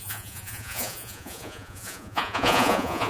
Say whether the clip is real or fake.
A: fake